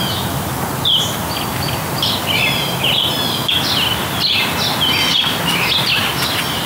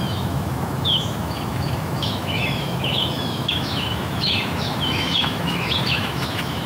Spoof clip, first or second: second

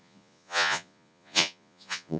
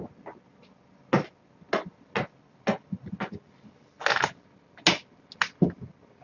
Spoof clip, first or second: first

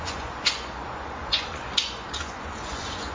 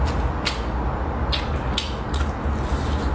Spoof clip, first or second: first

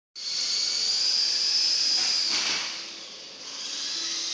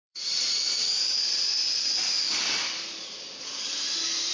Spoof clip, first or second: second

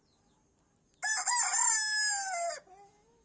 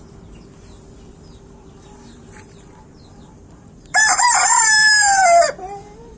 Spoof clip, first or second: second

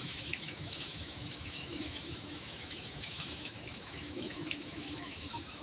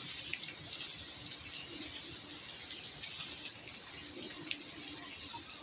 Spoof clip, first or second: first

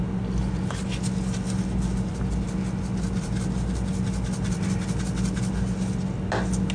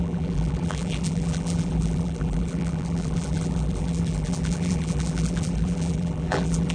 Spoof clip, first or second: second